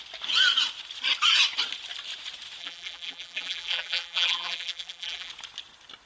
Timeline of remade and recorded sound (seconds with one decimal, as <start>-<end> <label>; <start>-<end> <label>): 0.0-2.6 recorded; 2.6-5.3 remade; 5.3-6.1 recorded